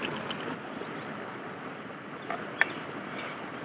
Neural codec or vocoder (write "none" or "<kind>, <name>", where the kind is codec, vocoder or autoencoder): none